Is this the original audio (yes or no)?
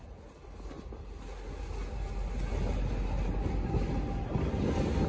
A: yes